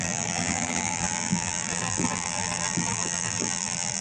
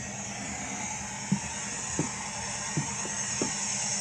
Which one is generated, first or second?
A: first